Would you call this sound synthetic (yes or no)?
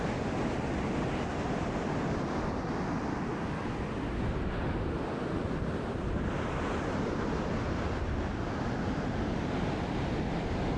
no